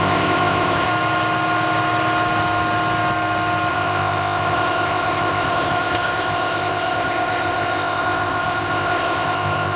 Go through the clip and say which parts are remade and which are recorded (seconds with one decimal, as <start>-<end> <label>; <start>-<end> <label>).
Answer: 0.0-0.9 remade; 0.9-3.7 recorded; 3.7-9.8 remade